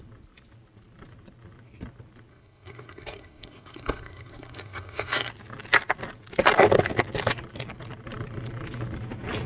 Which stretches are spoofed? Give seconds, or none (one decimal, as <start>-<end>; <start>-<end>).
2.3-5.3